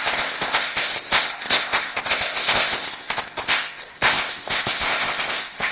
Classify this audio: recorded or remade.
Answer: remade